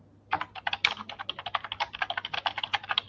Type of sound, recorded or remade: recorded